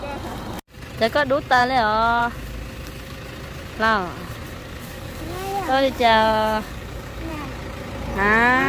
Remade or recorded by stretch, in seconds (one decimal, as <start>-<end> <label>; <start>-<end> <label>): 0.0-4.6 recorded; 4.6-7.3 remade; 7.3-8.7 recorded